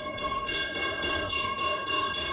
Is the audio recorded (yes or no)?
no